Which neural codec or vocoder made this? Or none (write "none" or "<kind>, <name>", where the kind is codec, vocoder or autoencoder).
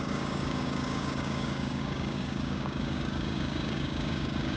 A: codec, DAC